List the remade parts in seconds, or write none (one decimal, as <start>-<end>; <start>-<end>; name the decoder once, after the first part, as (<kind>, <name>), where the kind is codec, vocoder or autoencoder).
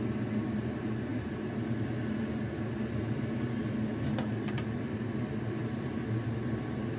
none